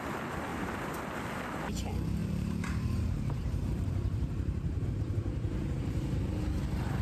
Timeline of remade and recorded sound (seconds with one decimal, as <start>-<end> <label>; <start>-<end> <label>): 0.0-0.5 recorded; 0.5-1.0 remade; 1.0-2.2 recorded; 2.2-6.2 remade; 6.2-7.0 recorded